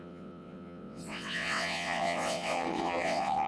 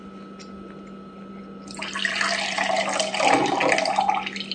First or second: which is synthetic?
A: first